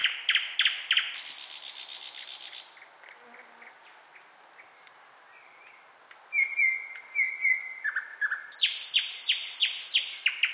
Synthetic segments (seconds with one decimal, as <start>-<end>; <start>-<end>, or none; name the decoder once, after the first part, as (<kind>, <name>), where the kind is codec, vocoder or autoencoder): none